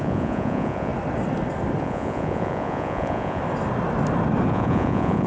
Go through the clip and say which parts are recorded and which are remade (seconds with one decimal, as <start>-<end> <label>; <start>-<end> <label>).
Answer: 0.0-0.9 remade; 0.9-1.8 recorded; 1.8-3.4 remade; 3.4-4.5 recorded; 4.5-5.3 remade